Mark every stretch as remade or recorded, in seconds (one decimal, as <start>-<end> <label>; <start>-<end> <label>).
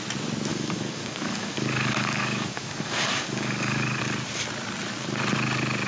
0.0-0.5 recorded; 0.5-4.0 remade; 4.0-5.9 recorded